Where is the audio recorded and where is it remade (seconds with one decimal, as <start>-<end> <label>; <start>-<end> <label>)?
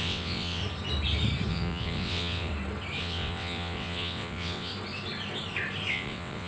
0.0-0.6 remade; 0.6-1.5 recorded; 1.5-2.5 remade; 2.5-3.0 recorded; 3.0-4.7 remade; 4.7-5.9 recorded; 5.9-6.5 remade